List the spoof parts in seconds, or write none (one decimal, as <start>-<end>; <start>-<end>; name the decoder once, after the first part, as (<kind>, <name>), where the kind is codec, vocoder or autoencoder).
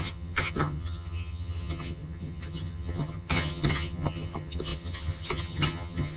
0.0-6.2 (vocoder, HiFi-GAN)